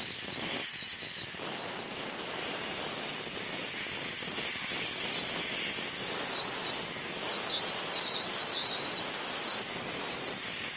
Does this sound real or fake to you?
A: real